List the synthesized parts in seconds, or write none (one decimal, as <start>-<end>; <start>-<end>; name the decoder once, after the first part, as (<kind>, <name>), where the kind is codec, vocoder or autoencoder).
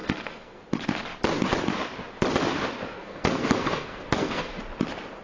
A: 0.0-0.6 (codec, SNAC); 2.9-4.6